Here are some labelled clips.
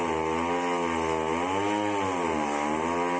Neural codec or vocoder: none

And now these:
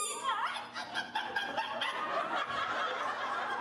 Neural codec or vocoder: none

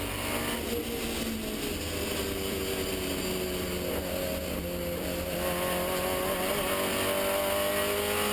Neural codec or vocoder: none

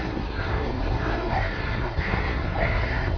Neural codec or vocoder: codec, SNAC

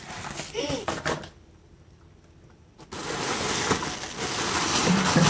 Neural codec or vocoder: none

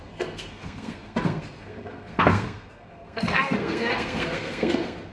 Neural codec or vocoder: codec, SNAC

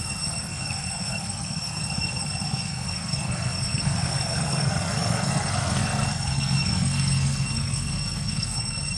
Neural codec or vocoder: codec, SNAC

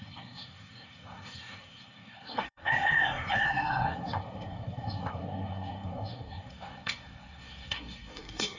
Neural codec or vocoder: codec, SNAC